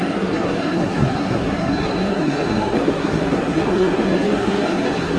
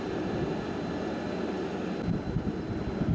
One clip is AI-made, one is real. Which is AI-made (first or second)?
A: first